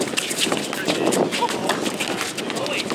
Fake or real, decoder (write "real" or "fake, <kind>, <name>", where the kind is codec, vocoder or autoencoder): real